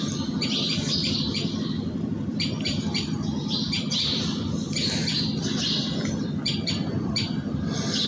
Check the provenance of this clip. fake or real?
real